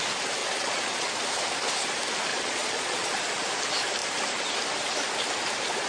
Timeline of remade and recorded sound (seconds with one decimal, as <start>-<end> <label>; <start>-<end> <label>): 0.0-0.4 recorded; 0.4-1.1 remade; 1.1-2.3 recorded; 2.3-3.2 remade; 3.2-5.9 recorded